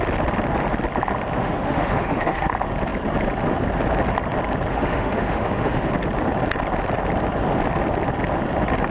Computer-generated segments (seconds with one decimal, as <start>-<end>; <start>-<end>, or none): 1.4-2.5; 4.7-5.9